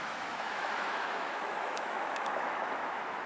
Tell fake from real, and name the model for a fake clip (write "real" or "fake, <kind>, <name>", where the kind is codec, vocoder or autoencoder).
fake, autoencoder, DAC-VAE